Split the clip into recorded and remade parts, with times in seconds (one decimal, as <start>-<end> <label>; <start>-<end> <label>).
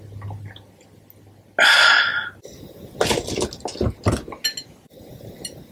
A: 0.0-5.7 recorded